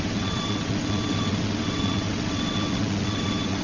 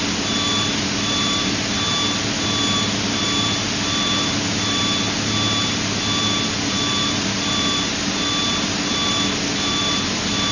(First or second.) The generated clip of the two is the first